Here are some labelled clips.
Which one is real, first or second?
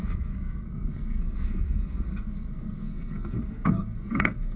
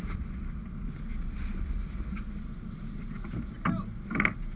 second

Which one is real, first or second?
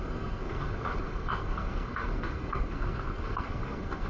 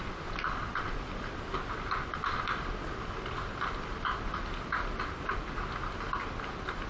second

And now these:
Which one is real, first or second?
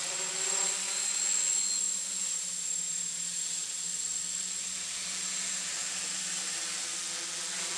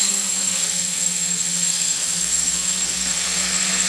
first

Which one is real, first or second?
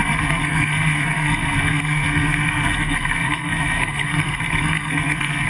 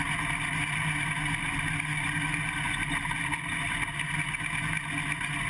second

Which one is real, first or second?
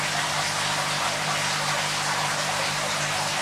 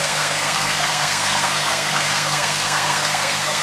first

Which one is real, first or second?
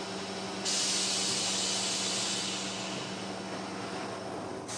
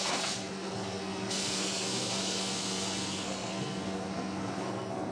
first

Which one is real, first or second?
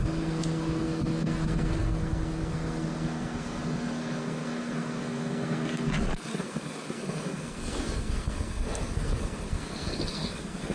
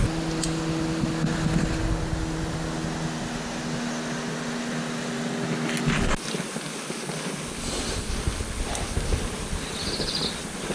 second